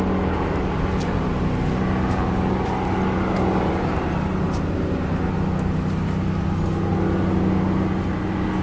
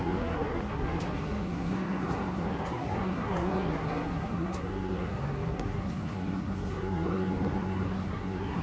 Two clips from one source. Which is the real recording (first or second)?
first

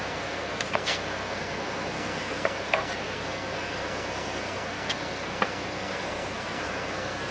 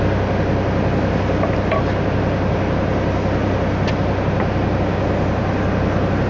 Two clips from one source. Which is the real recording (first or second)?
second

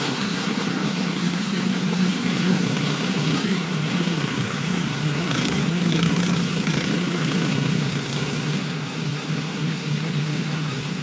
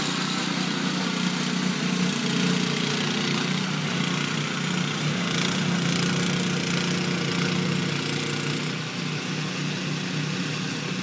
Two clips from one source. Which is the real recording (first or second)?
second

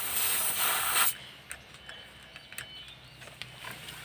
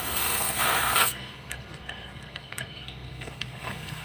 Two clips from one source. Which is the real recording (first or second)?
first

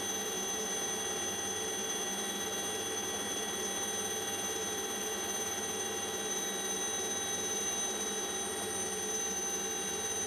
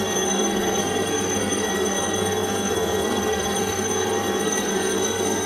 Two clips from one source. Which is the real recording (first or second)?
first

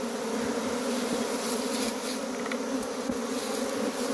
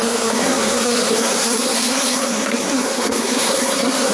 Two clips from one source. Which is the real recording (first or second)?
first